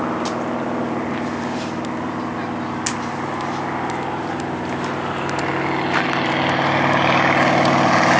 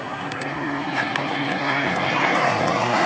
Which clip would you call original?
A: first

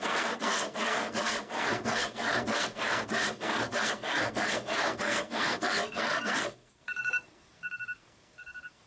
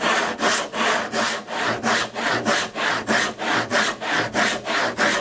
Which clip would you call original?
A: second